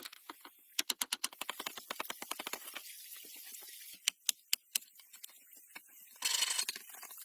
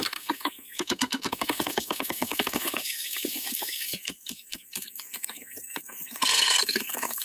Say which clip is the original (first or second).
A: first